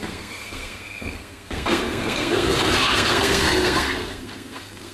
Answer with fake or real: fake